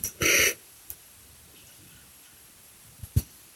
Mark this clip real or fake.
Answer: real